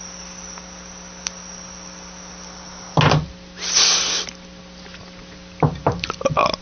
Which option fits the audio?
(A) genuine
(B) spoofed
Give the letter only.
A